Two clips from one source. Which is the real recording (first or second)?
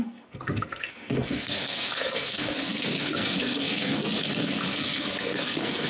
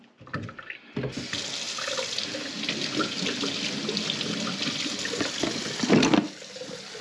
second